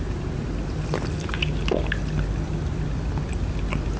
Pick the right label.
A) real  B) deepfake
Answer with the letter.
A